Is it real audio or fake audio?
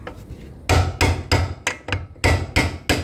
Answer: real